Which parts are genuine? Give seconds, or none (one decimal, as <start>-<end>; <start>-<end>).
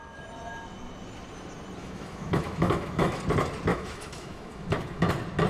0.0-1.8; 3.2-3.7; 5.1-5.5